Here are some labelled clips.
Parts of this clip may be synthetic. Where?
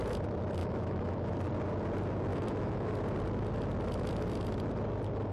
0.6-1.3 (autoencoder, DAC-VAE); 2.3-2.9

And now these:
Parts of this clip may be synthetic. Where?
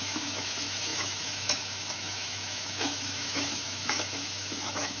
0.0-5.0 (autoencoder, DAC-VAE)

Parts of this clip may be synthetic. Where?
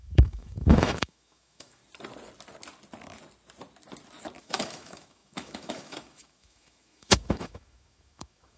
0.0-1.8 (autoencoder, DAC-VAE); 4.4-8.6